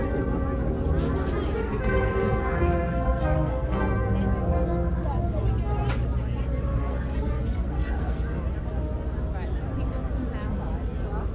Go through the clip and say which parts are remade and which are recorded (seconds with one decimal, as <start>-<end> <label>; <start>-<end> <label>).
0.0-1.6 recorded; 1.6-3.8 remade; 3.8-6.7 recorded; 6.7-8.4 remade; 8.4-11.3 recorded